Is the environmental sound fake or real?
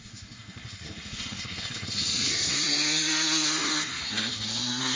fake